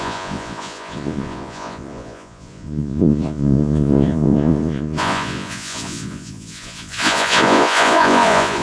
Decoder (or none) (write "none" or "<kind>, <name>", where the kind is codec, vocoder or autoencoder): vocoder, Vocos